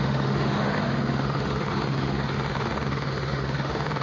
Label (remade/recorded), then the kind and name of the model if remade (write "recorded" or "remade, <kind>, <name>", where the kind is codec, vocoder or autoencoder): remade, autoencoder, DAC-VAE